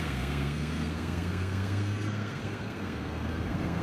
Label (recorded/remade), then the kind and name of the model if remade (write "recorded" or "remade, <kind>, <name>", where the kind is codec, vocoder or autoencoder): remade, codec, SNAC